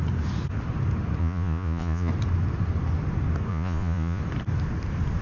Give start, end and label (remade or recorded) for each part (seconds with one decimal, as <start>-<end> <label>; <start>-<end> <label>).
0.0-1.2 recorded; 1.2-2.1 remade; 2.1-3.5 recorded; 3.5-4.2 remade; 4.2-5.2 recorded